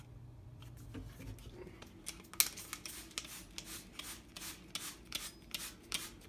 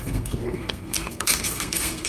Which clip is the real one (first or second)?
first